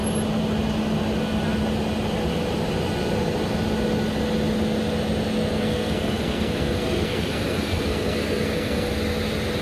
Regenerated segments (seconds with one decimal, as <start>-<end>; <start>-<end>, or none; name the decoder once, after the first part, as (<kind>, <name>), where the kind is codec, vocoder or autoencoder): 5.5-8.9 (codec, SNAC)